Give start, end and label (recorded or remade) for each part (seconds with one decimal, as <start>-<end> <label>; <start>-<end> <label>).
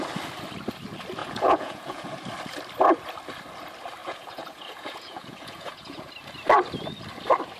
0.0-1.2 recorded; 1.2-2.1 remade; 2.1-4.0 recorded; 4.0-6.1 remade; 6.1-7.6 recorded